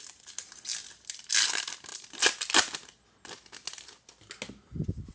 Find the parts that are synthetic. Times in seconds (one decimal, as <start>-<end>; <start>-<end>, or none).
none